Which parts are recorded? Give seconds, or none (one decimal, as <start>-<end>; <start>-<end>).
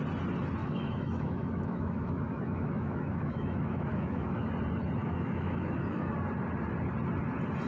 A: 0.0-0.6; 4.5-5.0; 6.1-7.7